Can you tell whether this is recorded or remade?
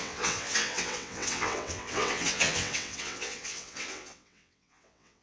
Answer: remade